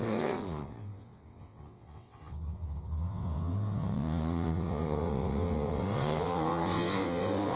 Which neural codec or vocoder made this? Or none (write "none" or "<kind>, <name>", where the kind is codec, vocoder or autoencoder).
vocoder, WaveNeXt